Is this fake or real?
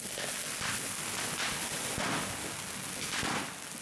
real